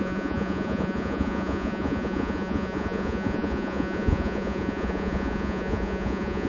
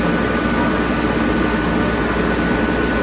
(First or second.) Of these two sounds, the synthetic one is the first